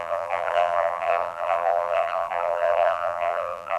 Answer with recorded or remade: remade